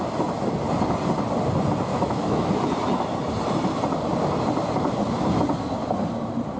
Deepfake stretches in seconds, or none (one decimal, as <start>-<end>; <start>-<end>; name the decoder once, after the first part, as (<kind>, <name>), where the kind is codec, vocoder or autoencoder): 1.9-2.5 (autoencoder, DAC-VAE)